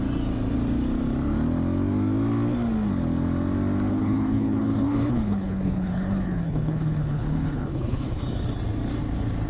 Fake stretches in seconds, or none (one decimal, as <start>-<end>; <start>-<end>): 3.9-8.2